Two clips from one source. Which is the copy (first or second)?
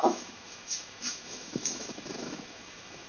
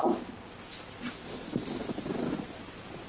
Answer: first